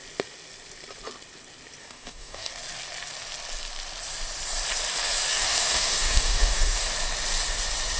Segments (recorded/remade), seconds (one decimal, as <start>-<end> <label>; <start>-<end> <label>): 0.0-1.8 recorded; 1.8-2.5 remade; 2.5-5.3 recorded; 5.3-6.8 remade; 6.8-8.0 recorded